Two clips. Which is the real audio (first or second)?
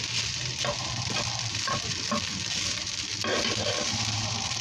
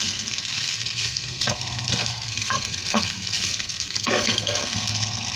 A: first